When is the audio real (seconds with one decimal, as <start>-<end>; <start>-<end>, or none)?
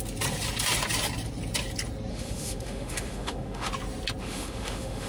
0.0-2.1; 3.7-4.2